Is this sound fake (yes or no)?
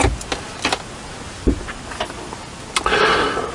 no